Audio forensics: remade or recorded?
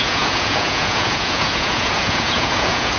remade